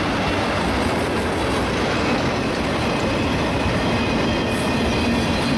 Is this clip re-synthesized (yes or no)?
no